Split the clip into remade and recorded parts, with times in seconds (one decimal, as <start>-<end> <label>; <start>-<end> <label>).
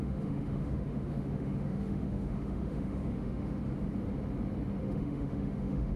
0.0-3.6 remade; 3.6-4.8 recorded; 4.8-6.0 remade